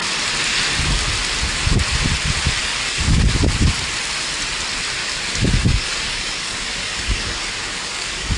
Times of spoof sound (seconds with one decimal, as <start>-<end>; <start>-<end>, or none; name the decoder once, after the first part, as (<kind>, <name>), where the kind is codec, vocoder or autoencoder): 2.6-3.2 (codec, DAC); 5.0-8.4